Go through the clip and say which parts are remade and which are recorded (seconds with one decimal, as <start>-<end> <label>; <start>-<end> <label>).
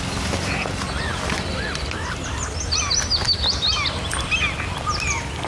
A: 0.0-5.5 recorded